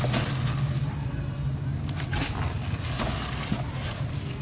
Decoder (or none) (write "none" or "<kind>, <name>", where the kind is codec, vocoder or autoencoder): none